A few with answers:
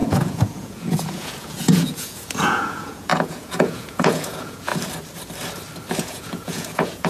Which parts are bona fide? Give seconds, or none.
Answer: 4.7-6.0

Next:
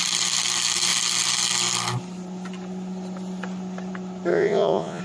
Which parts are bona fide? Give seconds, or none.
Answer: 0.0-4.3

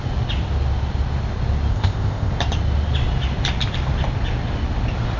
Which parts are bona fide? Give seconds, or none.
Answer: 0.0-1.7; 2.3-5.2

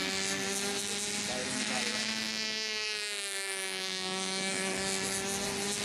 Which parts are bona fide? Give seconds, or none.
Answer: 0.0-1.4; 4.7-5.8

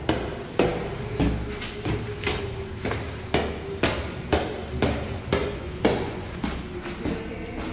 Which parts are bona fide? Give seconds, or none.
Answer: 0.0-5.4; 6.4-7.7